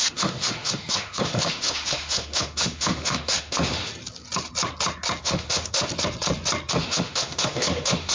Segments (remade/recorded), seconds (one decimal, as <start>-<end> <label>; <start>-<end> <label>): 0.0-3.9 remade; 3.9-5.2 recorded; 5.2-5.9 remade; 5.9-6.7 recorded; 6.7-8.1 remade

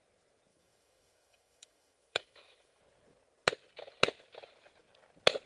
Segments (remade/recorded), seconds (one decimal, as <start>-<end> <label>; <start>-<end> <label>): 0.0-0.5 recorded; 0.5-2.8 remade; 2.8-5.5 recorded

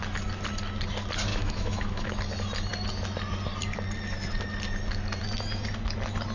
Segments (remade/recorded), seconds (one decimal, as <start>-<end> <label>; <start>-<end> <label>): 0.0-1.3 recorded; 1.3-2.1 remade; 2.1-6.3 recorded